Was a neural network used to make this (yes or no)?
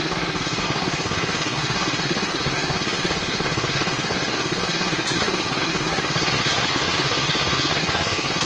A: yes